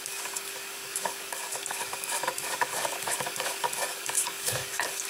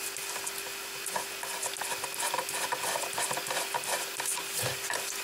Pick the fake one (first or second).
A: first